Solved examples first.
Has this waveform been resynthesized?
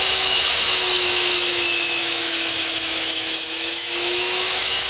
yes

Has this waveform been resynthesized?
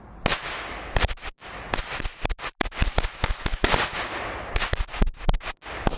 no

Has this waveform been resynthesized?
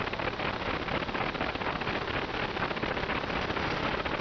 no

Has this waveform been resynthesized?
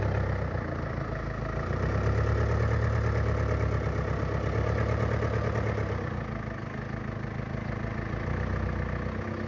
no